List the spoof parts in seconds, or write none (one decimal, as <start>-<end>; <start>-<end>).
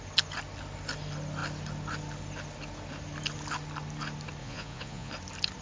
4.4-5.1